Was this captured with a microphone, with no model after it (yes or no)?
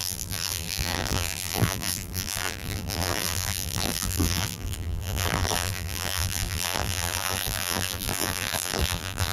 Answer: no